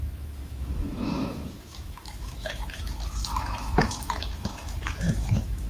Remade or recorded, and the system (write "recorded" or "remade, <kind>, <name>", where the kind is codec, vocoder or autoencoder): remade, autoencoder, DAC-VAE